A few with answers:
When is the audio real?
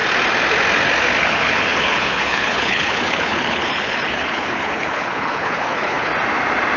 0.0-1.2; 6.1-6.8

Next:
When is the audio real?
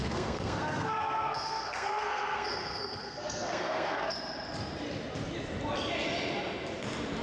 4.1-7.2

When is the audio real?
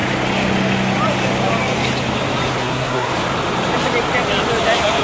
0.0-2.6; 3.1-5.0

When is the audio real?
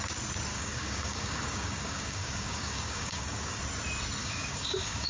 0.0-0.5; 3.6-4.2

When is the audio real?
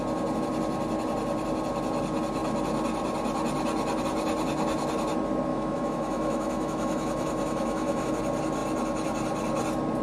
0.0-5.5; 8.1-10.0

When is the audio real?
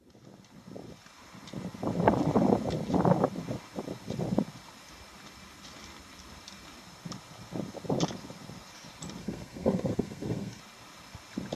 0.0-9.2; 10.6-11.6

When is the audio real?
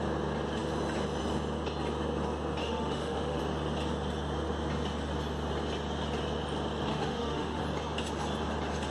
0.0-2.6; 3.4-6.9; 7.6-8.9